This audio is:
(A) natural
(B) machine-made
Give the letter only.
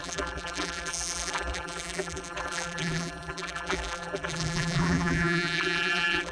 B